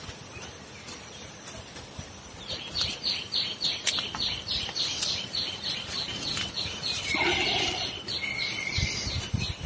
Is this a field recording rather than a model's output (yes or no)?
no